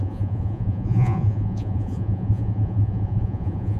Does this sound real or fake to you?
fake